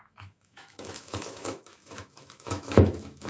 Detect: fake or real fake